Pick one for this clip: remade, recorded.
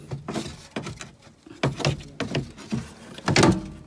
recorded